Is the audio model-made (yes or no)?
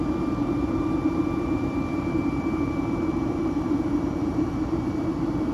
yes